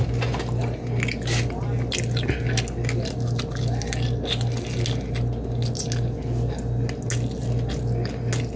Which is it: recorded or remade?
recorded